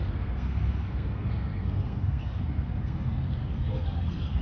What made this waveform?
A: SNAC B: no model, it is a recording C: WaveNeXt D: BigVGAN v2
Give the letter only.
A